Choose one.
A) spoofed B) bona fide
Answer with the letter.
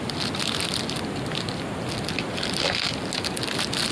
B